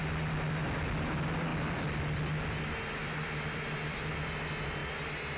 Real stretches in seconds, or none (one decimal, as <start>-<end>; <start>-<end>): 0.0-1.5; 2.0-3.0; 4.1-5.4

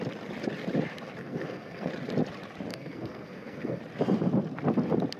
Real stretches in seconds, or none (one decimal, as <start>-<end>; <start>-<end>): 0.0-1.2; 1.9-2.7; 3.8-5.2

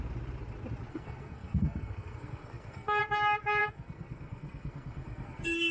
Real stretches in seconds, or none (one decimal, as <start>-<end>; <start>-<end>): 0.0-0.9; 3.0-3.6

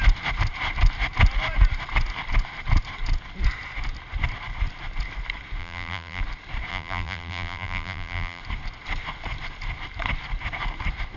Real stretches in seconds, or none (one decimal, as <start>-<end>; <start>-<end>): 0.0-5.6; 6.2-6.7; 8.4-11.2

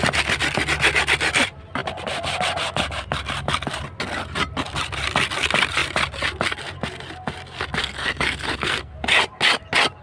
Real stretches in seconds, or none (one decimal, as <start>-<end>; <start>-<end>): 0.0-7.8; 8.9-10.0

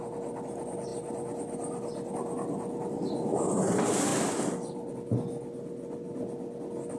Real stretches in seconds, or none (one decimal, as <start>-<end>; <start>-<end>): 0.0-0.9; 2.1-7.0

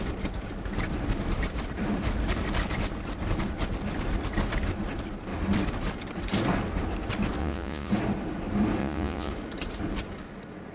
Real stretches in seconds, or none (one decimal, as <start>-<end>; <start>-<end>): 0.0-7.4; 7.9-8.8; 9.3-10.7

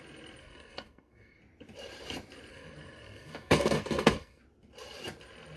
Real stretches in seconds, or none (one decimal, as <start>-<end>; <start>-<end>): 0.0-0.4; 1.4-2.5; 4.4-5.6